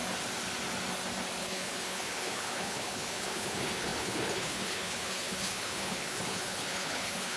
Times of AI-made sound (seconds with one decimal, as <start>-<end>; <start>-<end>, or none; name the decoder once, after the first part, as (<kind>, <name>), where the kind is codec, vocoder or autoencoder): 1.4-7.4 (codec, HILCodec)